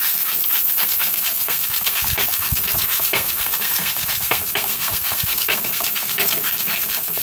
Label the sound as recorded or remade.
remade